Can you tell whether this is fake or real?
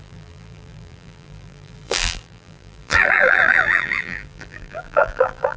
fake